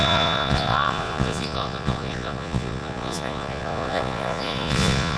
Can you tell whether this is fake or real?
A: fake